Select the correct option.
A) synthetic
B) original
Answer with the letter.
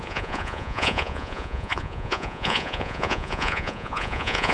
A